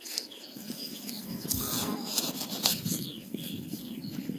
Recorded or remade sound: remade